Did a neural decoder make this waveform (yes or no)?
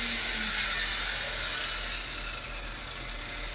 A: no